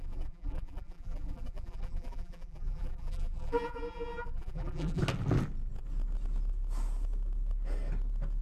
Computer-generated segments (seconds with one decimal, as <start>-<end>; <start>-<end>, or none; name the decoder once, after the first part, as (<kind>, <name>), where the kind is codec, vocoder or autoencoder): 0.0-5.0 (vocoder, BigVGAN v2)